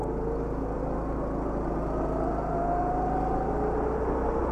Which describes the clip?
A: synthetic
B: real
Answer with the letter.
B